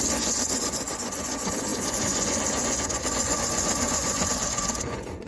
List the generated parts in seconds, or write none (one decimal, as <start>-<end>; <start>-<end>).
0.0-5.3